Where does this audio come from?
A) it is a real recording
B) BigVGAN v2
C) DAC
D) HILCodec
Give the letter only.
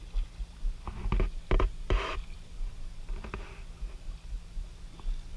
A